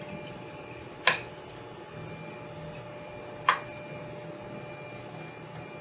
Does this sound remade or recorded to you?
recorded